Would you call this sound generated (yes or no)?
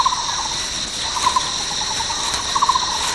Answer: no